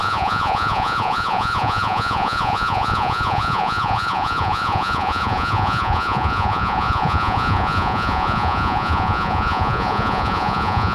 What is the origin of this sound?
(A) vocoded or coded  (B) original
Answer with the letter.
A